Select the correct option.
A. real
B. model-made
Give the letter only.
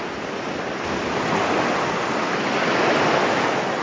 A